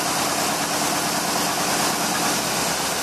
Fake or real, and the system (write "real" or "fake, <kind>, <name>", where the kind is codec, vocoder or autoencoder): real